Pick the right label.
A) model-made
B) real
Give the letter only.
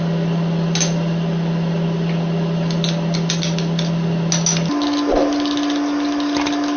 B